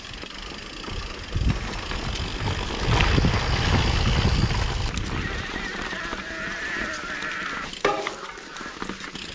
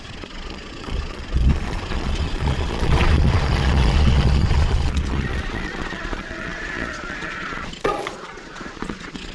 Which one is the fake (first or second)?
second